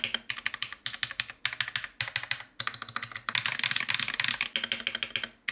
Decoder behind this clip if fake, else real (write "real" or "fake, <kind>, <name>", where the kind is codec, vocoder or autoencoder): real